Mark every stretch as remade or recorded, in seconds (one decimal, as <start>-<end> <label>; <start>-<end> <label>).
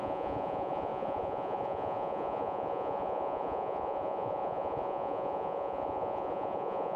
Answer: 0.0-7.0 remade